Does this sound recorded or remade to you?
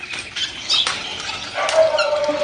recorded